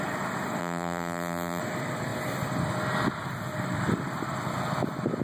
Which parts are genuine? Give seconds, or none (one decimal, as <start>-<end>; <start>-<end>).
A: 0.0-0.6; 1.6-5.2